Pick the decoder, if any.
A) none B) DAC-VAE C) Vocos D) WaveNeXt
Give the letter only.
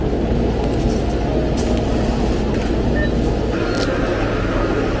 A